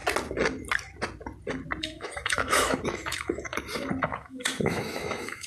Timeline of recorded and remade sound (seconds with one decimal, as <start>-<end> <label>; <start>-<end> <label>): 0.0-1.8 recorded; 1.8-3.5 remade; 3.5-4.0 recorded; 4.0-5.5 remade